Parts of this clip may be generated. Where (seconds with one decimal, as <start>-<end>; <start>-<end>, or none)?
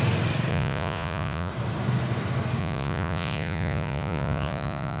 0.5-1.5; 2.6-5.0